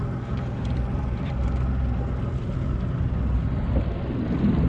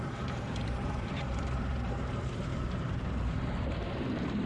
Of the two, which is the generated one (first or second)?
second